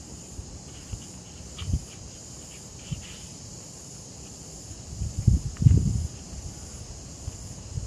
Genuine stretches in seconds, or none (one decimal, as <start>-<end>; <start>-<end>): 0.0-7.9